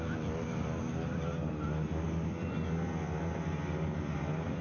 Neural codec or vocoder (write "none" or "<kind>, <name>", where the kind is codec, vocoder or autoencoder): none